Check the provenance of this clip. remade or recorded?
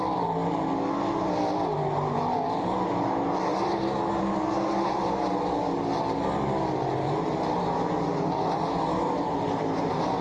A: recorded